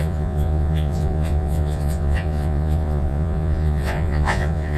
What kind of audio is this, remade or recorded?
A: remade